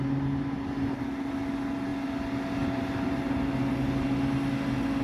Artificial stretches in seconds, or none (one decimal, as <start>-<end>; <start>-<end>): none